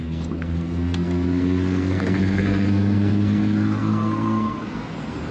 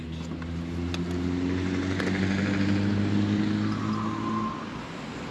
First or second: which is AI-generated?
first